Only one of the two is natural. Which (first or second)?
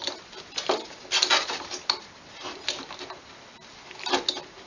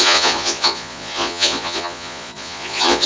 first